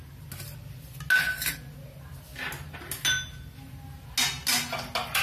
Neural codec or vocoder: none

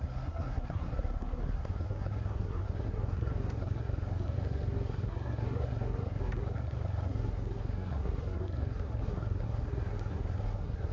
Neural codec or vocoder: codec, SNAC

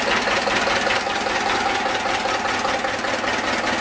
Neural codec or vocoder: none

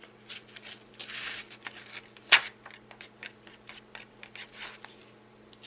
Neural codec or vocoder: none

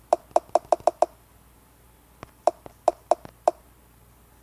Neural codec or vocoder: none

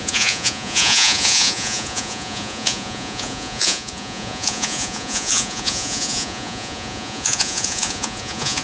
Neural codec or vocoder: vocoder, Vocos